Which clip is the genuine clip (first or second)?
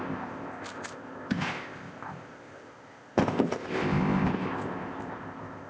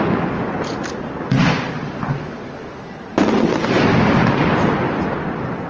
second